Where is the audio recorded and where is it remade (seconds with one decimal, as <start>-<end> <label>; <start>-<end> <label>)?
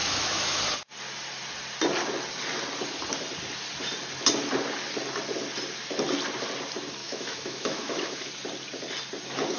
0.0-0.6 remade; 0.6-7.0 recorded; 7.0-8.3 remade; 8.3-9.6 recorded